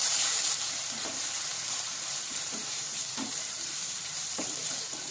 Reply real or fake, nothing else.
fake